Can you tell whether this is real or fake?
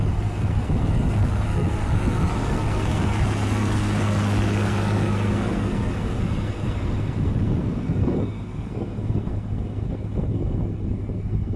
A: fake